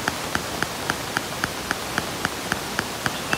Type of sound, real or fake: real